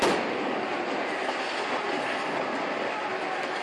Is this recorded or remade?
recorded